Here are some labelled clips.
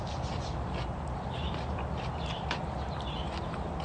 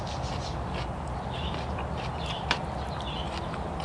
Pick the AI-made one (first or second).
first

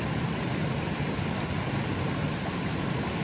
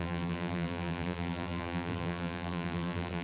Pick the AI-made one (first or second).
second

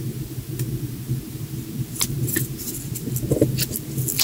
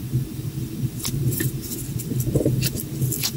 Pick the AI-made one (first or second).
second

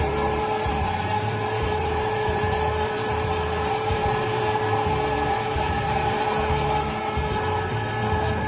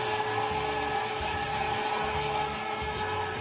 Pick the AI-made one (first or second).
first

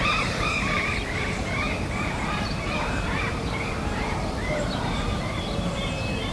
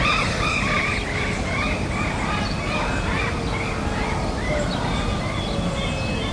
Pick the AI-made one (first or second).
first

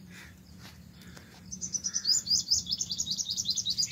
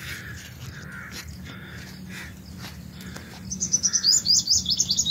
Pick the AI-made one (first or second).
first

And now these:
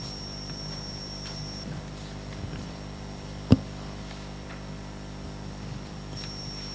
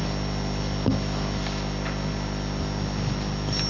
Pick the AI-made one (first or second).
first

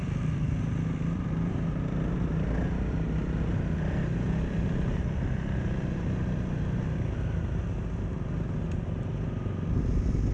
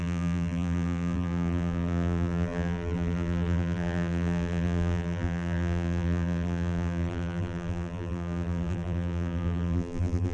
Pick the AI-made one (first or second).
second